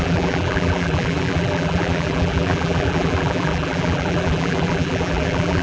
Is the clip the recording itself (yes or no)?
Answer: no